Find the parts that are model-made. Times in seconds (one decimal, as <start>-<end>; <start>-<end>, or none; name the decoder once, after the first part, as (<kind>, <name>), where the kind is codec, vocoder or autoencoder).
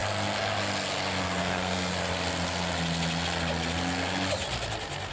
1.4-1.9 (codec, SNAC)